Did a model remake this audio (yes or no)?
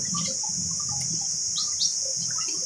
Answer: no